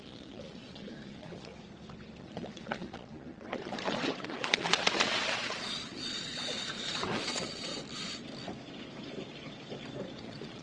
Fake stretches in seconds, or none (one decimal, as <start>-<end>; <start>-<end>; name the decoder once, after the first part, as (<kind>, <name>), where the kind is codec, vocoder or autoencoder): 0.0-1.5 (vocoder, Vocos); 2.2-7.7; 10.2-10.6